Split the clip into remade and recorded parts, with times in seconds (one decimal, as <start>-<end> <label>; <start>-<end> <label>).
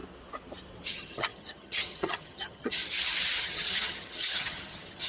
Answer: 0.0-0.9 recorded; 0.9-2.8 remade; 2.8-3.4 recorded; 3.4-5.1 remade